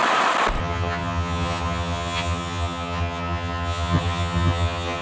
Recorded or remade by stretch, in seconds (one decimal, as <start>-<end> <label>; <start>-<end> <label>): 0.0-0.6 recorded; 0.6-5.0 remade